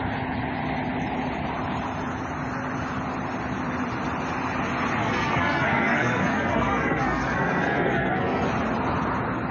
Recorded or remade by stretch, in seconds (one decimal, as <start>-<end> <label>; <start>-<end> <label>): 0.0-5.0 recorded; 5.0-8.5 remade; 8.5-9.5 recorded